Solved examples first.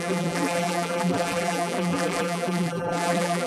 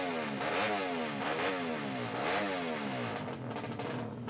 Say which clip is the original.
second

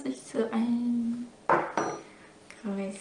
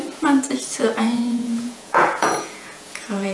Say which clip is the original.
first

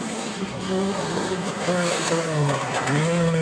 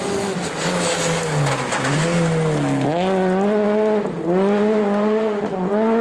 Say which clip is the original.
second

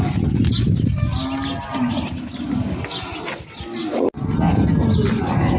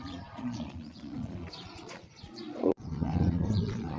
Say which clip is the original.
first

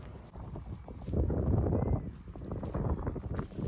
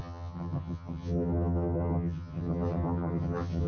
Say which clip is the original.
first